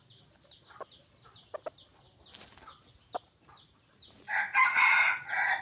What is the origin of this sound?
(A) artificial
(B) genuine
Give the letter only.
B